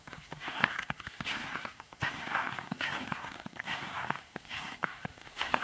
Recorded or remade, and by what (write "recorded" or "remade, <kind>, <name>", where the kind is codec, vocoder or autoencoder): remade, codec, SNAC